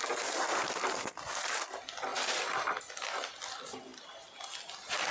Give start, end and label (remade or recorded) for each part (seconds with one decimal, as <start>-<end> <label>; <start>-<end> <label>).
0.0-5.1 recorded